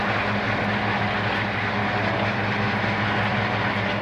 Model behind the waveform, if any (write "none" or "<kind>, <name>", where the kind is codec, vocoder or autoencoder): none